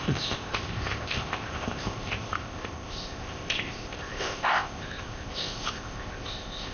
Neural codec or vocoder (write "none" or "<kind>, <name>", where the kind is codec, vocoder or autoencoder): codec, ZipCodec